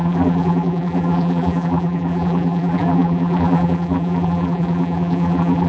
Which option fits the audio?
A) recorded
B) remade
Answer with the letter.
B